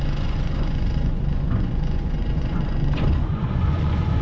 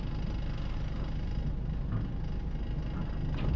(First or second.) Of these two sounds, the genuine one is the second